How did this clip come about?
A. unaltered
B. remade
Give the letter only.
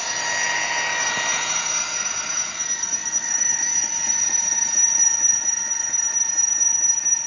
A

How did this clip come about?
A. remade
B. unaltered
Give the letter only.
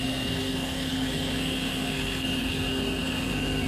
A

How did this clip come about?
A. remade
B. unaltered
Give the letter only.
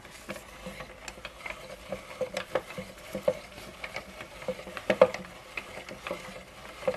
B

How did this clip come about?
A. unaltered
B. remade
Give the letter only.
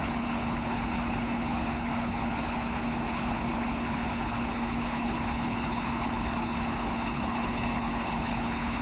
B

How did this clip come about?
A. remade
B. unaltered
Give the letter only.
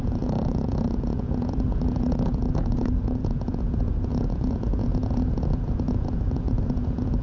A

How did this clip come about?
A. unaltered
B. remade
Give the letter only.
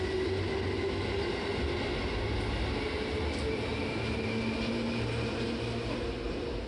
A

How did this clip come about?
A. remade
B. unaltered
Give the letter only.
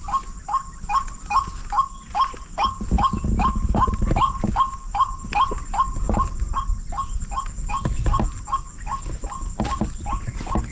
B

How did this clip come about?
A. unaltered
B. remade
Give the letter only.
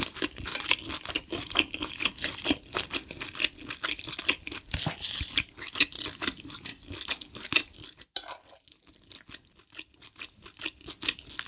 A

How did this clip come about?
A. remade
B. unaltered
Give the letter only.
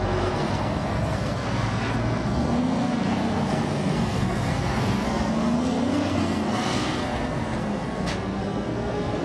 A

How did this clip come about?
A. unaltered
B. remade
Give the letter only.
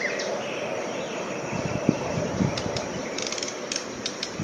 B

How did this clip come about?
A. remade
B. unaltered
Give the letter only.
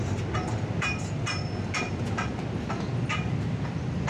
B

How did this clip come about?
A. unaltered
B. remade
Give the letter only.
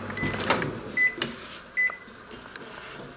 A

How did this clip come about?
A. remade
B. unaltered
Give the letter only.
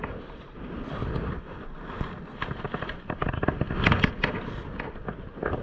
B